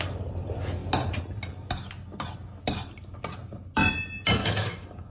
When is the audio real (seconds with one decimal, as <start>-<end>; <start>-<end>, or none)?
0.0-4.4